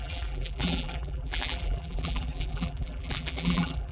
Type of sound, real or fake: fake